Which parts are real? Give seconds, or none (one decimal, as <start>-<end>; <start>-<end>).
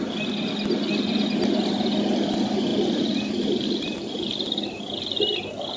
0.0-2.7; 3.8-5.8